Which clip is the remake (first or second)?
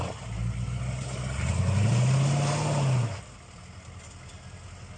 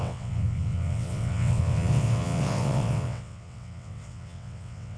second